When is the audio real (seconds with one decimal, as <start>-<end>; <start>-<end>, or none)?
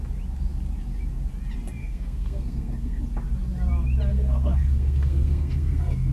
0.0-1.8; 3.0-4.1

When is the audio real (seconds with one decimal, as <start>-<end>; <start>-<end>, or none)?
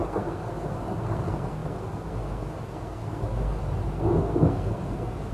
none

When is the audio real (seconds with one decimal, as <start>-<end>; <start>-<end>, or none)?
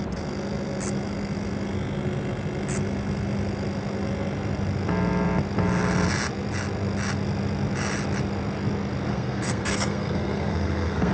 0.0-9.1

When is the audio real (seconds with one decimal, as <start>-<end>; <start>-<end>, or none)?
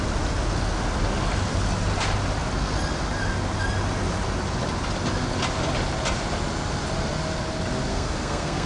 0.0-7.9